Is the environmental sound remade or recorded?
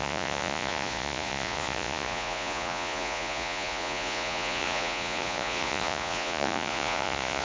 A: remade